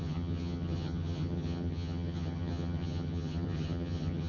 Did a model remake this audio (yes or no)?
yes